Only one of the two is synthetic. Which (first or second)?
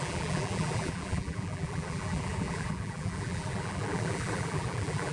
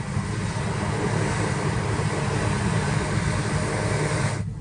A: first